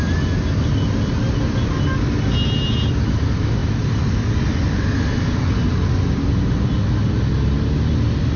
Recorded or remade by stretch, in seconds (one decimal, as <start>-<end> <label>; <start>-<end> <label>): 0.0-8.4 recorded

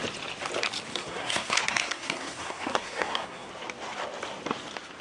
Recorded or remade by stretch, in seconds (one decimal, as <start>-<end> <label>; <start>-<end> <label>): 0.0-0.9 recorded; 0.9-3.5 remade; 3.5-5.0 recorded

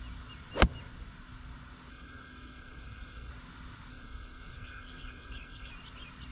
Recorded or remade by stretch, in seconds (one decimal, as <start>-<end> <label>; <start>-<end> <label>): 0.0-1.9 recorded; 1.9-3.3 remade; 3.3-3.9 recorded; 3.9-5.7 remade; 5.7-6.3 recorded